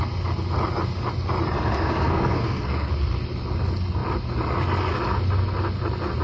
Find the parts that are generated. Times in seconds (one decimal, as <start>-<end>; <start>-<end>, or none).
1.7-2.9